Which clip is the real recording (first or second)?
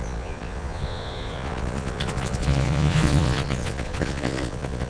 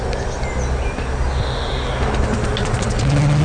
second